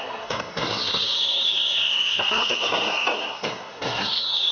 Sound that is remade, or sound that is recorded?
remade